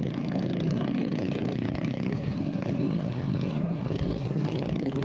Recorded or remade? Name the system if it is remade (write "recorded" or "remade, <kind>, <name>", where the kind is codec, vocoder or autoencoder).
remade, codec, SNAC